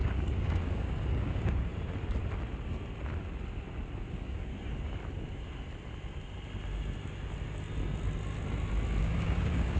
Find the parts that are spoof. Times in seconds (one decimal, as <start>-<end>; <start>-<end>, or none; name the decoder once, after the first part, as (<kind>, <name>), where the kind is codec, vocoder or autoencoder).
0.0-1.7 (codec, DAC); 4.1-4.5; 9.0-9.8